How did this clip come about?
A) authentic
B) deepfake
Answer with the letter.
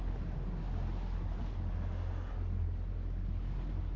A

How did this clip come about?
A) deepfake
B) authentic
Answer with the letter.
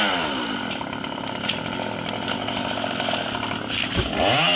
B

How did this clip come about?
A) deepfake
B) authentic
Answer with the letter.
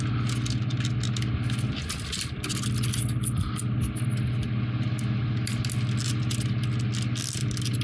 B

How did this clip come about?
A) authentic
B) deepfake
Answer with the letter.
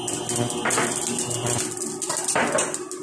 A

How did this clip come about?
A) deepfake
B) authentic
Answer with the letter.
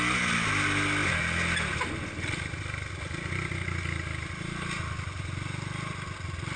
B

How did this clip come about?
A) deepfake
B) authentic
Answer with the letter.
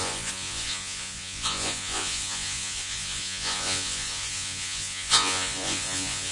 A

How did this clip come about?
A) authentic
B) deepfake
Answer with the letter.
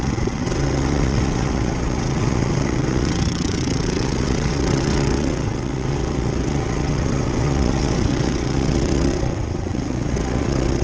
B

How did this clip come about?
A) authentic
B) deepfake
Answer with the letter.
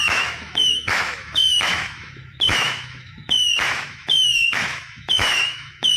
B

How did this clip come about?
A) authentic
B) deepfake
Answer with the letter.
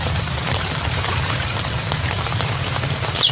B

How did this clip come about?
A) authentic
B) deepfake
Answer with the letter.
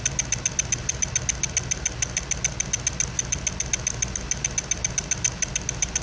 A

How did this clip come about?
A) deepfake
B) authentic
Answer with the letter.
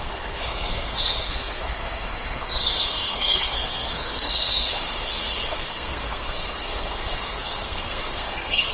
A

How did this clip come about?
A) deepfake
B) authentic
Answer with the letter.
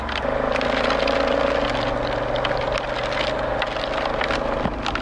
B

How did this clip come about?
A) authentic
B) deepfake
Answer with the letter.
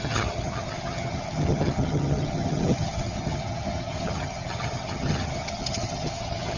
B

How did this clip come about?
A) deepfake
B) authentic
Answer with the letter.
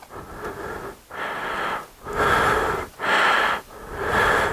B